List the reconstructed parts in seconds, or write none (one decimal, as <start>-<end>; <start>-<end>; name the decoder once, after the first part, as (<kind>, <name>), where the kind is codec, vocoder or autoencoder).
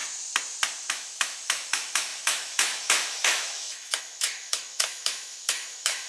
0.9-6.1 (autoencoder, DAC-VAE)